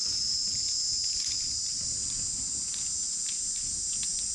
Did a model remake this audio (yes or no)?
no